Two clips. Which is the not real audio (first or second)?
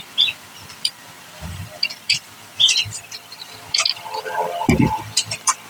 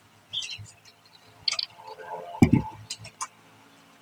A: first